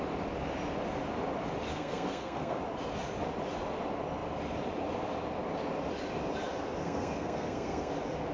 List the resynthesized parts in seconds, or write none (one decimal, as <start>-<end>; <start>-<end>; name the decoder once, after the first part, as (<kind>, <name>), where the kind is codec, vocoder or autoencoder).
1.7-2.6 (codec, SNAC); 6.8-7.9